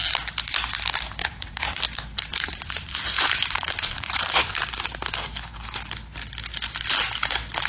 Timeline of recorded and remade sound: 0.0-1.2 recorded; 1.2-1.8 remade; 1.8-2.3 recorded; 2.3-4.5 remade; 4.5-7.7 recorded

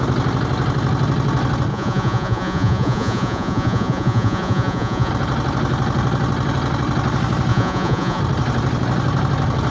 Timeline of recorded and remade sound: 0.0-1.7 recorded; 1.7-5.1 remade; 5.1-7.5 recorded; 7.5-8.2 remade; 8.2-9.7 recorded

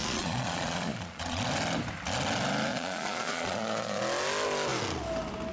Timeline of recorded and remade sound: 0.0-1.4 remade; 1.4-2.7 recorded; 2.7-4.0 remade; 4.0-5.5 recorded

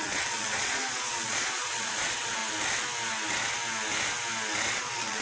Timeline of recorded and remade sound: 0.0-2.4 remade; 2.4-4.8 recorded; 4.8-5.2 remade

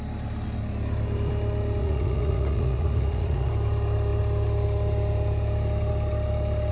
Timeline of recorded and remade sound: 0.0-1.8 recorded; 1.8-3.5 remade; 3.5-6.7 recorded

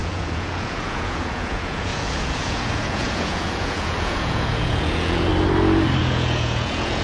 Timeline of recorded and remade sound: 0.0-5.3 remade; 5.3-6.0 recorded; 6.0-7.0 remade

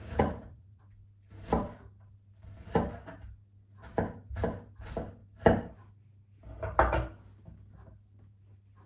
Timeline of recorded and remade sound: 0.0-0.8 remade; 0.8-8.9 recorded